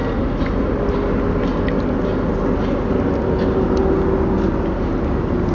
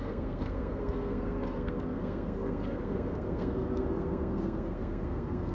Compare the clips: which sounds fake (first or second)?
second